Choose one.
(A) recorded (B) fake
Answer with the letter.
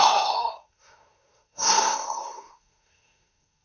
B